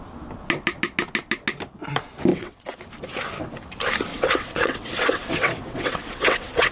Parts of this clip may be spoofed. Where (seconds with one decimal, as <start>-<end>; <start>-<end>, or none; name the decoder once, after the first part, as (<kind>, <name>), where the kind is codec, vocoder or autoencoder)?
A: 2.3-2.8 (vocoder, WaveNeXt); 4.1-6.7